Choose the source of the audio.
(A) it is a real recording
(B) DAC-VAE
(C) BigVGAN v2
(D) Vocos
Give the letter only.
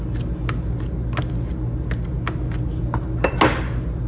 A